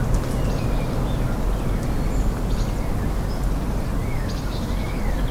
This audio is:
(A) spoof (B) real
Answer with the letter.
B